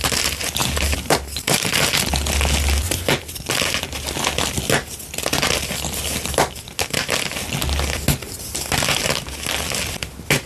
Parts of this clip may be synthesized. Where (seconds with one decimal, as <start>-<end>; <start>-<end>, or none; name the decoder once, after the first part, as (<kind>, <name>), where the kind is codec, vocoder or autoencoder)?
0.6-2.1 (vocoder, BigVGAN v2)